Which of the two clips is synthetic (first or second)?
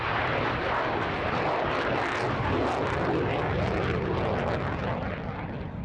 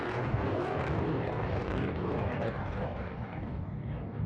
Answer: second